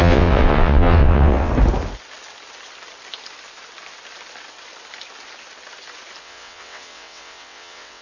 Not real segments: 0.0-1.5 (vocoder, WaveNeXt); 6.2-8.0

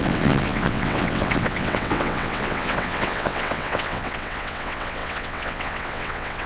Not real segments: 0.0-6.5 (vocoder, WaveNeXt)

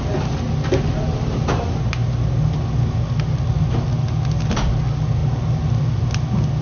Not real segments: none

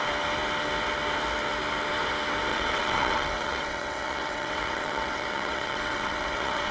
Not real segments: 2.5-6.7 (vocoder, WaveNeXt)

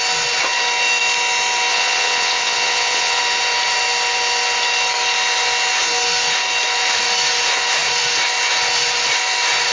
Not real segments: 1.7-3.2 (vocoder, WaveNeXt)

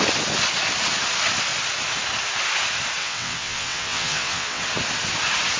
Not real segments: 3.0-4.6 (vocoder, WaveNeXt)

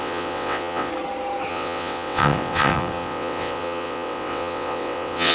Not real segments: 0.0-0.9 (vocoder, WaveNeXt); 1.5-5.3